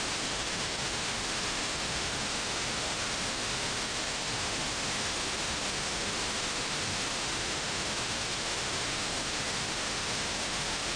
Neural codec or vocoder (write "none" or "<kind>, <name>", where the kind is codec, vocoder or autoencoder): autoencoder, DAC-VAE